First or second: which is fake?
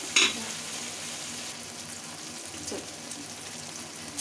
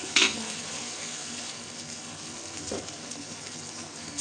second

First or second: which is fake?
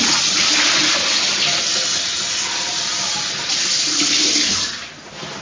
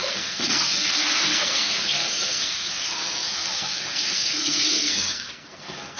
second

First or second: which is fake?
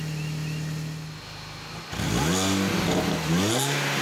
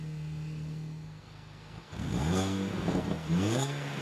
second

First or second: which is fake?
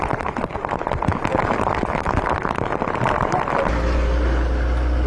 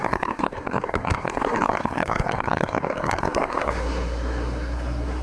second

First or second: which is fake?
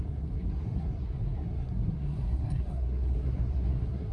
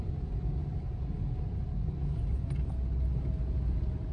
first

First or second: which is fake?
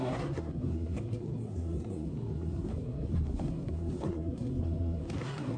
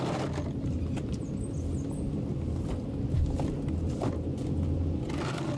first